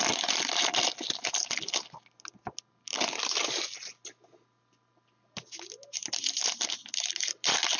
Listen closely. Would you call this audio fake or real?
real